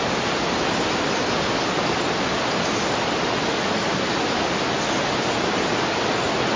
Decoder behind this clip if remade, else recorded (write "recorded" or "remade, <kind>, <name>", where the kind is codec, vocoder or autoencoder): recorded